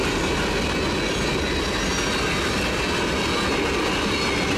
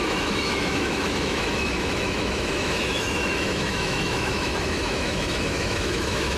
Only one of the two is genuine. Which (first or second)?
first